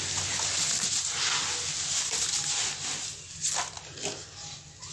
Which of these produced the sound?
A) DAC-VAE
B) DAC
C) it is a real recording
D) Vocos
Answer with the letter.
C